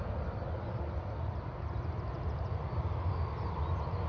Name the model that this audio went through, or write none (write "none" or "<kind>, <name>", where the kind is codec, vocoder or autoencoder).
none